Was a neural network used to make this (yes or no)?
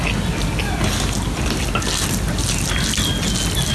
no